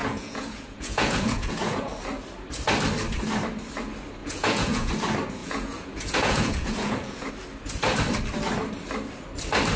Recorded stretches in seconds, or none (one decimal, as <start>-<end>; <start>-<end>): 1.9-4.2; 4.9-5.4; 7.3-9.8